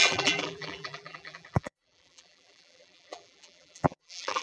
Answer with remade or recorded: remade